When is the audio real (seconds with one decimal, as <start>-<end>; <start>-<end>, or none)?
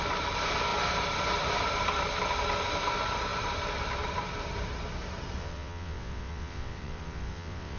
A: 0.0-5.4